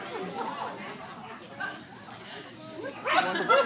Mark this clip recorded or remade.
recorded